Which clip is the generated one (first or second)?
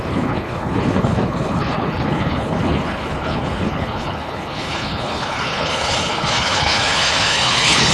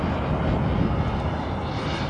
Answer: first